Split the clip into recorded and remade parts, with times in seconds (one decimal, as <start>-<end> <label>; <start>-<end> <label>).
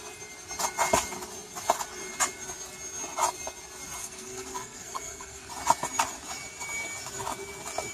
0.0-4.0 recorded; 4.0-5.5 remade; 5.5-7.9 recorded